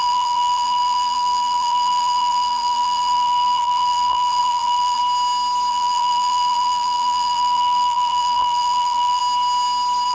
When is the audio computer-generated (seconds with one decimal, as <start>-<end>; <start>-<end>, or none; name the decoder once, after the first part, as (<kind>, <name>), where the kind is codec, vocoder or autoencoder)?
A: 0.0-5.0 (vocoder, BigVGAN v2); 5.7-9.2